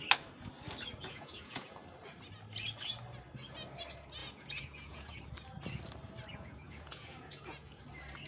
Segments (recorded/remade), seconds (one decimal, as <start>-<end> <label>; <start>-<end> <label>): 0.0-1.0 recorded; 1.0-1.8 remade; 1.8-4.2 recorded; 4.2-5.2 remade; 5.2-6.3 recorded; 6.3-7.8 remade; 7.8-8.3 recorded